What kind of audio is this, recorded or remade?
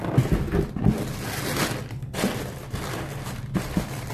recorded